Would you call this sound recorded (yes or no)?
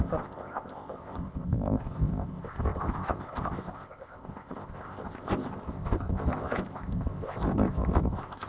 no